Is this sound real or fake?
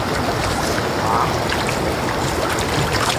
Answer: real